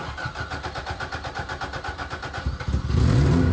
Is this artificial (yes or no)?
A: no